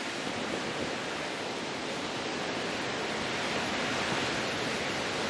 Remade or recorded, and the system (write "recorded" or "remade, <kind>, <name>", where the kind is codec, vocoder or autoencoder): recorded